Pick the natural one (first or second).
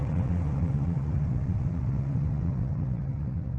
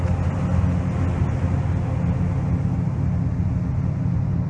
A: second